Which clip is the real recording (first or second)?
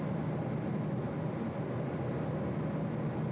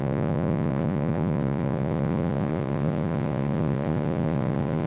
first